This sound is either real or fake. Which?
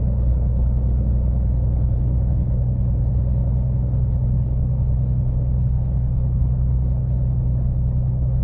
fake